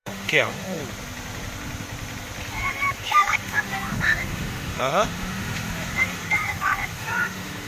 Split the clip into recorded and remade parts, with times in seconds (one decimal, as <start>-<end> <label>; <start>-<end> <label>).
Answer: 0.0-0.8 remade; 0.8-2.5 recorded; 2.5-7.7 remade